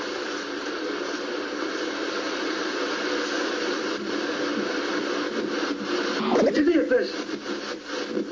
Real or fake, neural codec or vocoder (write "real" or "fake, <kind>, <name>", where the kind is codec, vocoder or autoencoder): real